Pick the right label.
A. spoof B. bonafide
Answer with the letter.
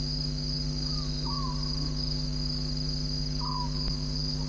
B